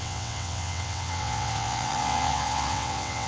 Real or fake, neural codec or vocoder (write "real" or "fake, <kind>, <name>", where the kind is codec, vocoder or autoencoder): fake, vocoder, WaveNeXt